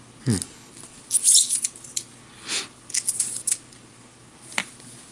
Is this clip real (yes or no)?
yes